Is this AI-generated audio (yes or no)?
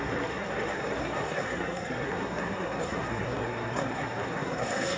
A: yes